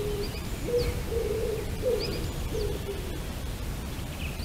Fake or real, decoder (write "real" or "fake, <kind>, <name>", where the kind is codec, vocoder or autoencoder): fake, vocoder, BigVGAN v2